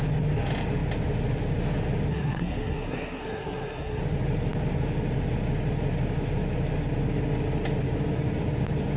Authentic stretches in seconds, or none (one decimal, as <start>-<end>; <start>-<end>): 0.0-2.1; 4.0-9.0